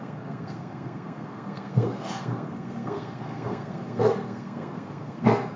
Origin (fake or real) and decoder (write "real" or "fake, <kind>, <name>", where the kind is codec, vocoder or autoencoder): fake, codec, SNAC